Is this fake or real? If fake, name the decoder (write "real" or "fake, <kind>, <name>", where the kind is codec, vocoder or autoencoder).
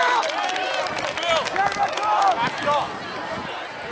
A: real